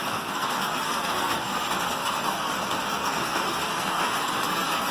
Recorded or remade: remade